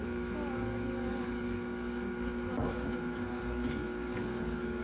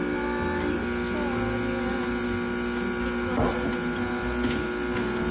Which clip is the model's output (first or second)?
first